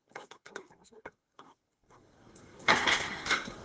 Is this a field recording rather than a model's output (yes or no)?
no